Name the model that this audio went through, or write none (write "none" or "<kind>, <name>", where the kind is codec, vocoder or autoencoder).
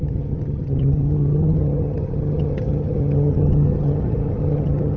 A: vocoder, HiFi-GAN